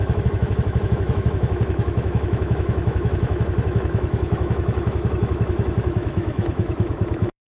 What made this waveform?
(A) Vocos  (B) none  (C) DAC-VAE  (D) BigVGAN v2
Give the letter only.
C